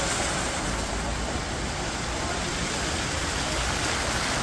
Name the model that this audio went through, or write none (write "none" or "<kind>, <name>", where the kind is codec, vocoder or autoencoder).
none